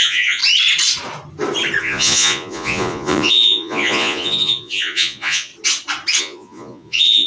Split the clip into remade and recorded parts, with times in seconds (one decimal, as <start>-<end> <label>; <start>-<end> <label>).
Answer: 0.0-0.4 remade; 0.4-1.8 recorded; 1.8-5.5 remade; 5.5-6.2 recorded; 6.2-7.3 remade